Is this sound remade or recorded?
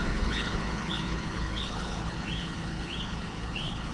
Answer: remade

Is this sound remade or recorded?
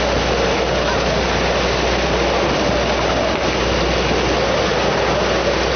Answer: recorded